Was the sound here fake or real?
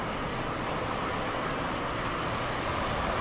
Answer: real